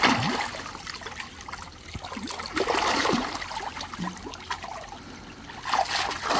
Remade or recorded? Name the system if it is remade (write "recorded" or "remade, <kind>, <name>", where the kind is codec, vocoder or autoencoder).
recorded